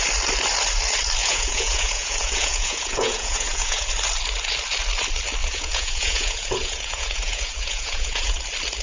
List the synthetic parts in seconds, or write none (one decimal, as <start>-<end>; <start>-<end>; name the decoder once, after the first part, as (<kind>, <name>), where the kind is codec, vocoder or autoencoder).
1.2-3.9 (vocoder, Vocos); 5.4-8.4